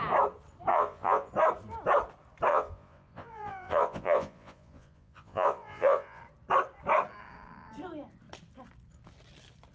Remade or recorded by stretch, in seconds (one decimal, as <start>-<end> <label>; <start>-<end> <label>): 0.0-0.7 recorded; 0.7-1.3 remade; 1.3-2.5 recorded; 2.5-6.2 remade; 6.2-9.7 recorded